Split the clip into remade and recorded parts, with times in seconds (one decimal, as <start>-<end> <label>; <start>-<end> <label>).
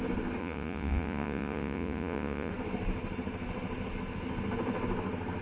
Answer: 0.0-0.4 recorded; 0.4-2.5 remade; 2.5-5.4 recorded